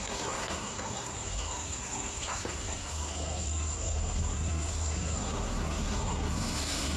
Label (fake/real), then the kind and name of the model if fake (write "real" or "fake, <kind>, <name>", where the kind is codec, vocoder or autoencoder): fake, codec, SNAC